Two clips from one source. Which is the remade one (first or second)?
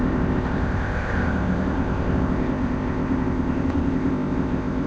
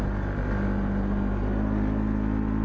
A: first